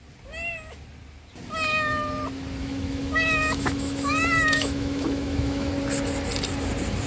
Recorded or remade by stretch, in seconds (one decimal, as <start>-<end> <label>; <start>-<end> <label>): 0.0-2.6 recorded; 2.6-5.7 remade; 5.7-7.1 recorded